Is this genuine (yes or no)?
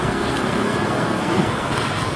no